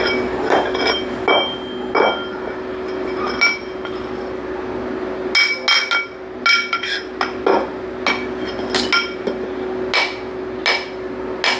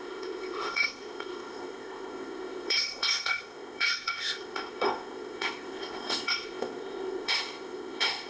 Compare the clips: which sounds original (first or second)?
first